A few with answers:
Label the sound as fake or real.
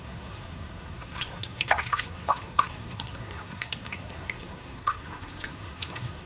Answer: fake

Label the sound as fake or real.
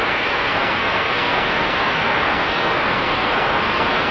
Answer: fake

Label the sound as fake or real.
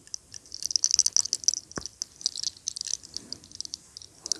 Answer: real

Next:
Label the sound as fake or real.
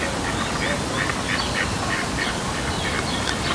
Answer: real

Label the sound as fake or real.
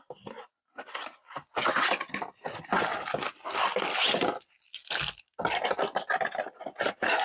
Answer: real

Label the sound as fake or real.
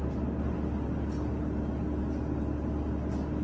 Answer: real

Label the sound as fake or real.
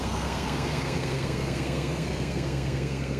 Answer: fake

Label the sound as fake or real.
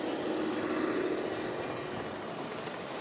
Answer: real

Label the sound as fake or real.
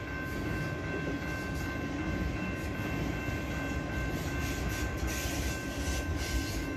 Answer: real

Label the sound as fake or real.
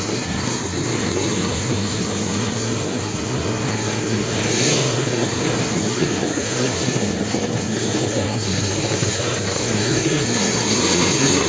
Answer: fake